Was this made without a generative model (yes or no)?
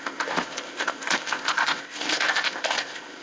no